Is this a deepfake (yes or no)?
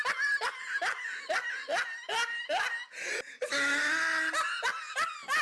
no